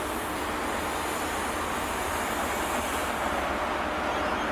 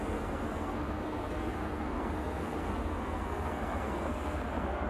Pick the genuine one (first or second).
first